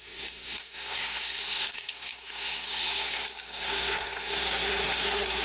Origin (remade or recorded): remade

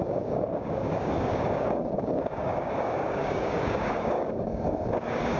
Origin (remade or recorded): remade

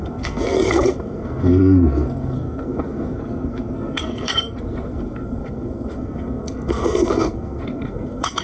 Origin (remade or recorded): remade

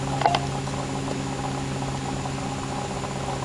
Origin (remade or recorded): recorded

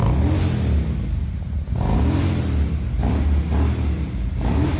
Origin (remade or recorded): recorded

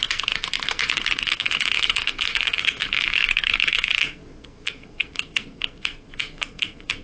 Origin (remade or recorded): remade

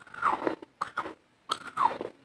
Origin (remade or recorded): recorded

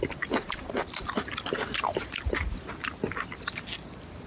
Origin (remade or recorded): recorded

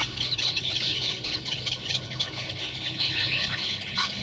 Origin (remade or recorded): remade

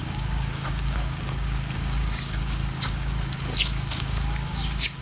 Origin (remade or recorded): remade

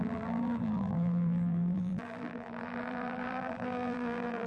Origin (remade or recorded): remade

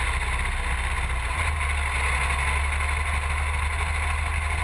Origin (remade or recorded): recorded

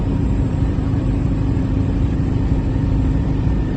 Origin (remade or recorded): remade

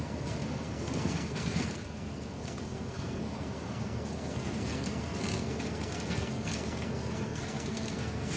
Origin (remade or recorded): remade